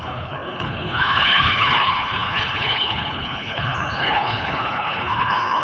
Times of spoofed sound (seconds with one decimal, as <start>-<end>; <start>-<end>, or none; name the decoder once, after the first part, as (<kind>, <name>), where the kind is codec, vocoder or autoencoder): 0.0-5.6 (codec, HILCodec)